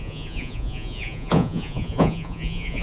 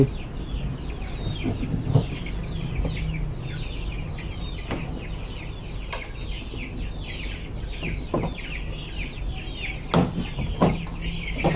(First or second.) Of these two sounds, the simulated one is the first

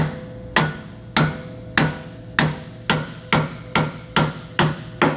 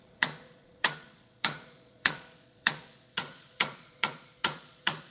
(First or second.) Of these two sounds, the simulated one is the second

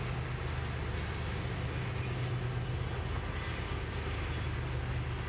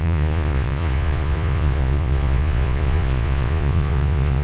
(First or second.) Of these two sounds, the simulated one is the second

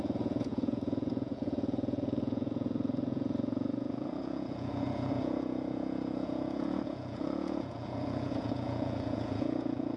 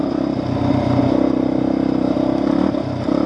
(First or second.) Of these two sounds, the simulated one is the first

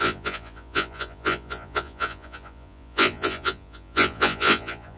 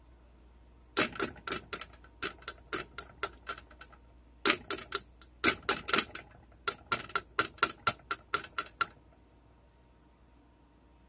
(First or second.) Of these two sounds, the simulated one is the first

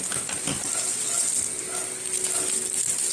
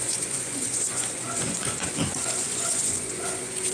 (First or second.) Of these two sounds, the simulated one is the second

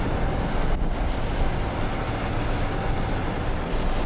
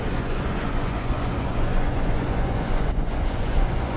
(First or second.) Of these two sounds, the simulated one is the second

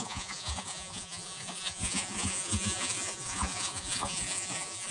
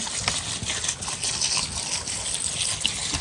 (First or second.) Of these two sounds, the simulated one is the first